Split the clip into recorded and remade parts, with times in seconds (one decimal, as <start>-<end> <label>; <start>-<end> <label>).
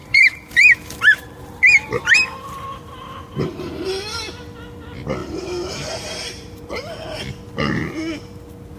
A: 0.0-3.7 remade; 3.7-5.2 recorded; 5.2-6.6 remade; 6.6-8.8 recorded